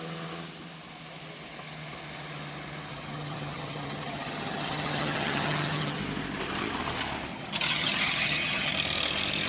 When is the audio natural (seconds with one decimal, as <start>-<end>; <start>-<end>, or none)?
0.0-2.9; 6.0-7.3; 8.7-9.5